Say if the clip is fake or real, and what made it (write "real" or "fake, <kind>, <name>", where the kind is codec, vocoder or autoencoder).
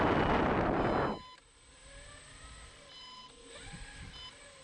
real